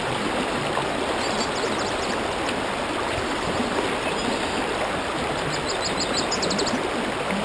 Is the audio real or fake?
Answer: real